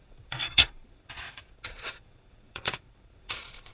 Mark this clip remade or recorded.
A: remade